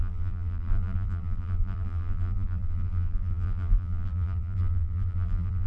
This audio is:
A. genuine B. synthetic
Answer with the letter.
B